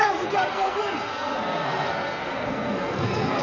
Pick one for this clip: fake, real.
fake